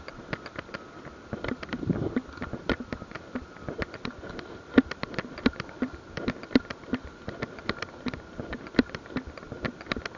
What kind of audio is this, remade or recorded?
recorded